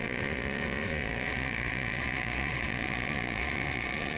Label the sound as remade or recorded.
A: remade